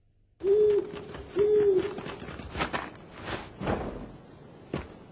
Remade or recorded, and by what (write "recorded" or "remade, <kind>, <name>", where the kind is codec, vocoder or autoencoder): recorded